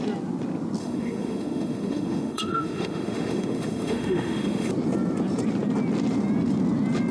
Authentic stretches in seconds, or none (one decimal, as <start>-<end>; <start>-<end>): 0.0-0.8; 4.7-7.1